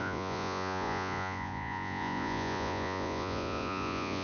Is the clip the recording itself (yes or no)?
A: no